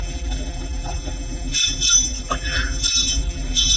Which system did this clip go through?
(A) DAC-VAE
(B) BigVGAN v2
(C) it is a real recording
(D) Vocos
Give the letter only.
B